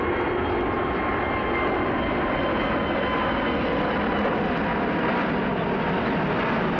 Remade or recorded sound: recorded